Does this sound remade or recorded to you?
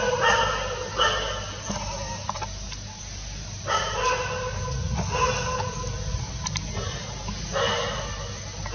recorded